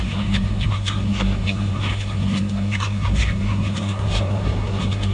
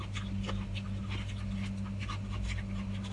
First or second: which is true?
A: second